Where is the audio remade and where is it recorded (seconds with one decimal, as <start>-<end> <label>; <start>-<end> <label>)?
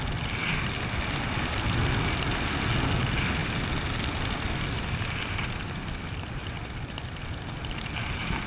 0.0-0.4 recorded; 0.4-1.6 remade; 1.6-3.4 recorded; 3.4-5.0 remade; 5.0-8.5 recorded